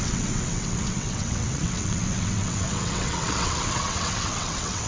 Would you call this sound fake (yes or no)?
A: yes